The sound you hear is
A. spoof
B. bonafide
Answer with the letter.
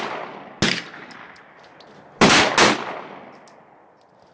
B